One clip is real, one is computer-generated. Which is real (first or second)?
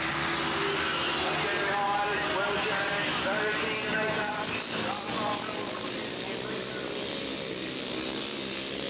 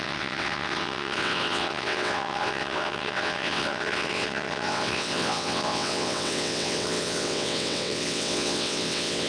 first